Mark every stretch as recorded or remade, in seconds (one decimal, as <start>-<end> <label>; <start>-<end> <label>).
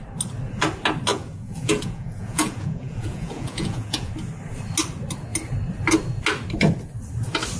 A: 0.0-1.1 recorded; 1.1-4.1 remade; 4.1-7.6 recorded